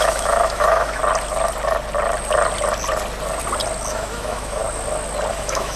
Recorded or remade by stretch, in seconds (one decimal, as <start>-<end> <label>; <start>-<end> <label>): 0.0-1.0 remade; 1.0-3.9 recorded; 3.9-4.6 remade; 4.6-5.3 recorded; 5.3-5.8 remade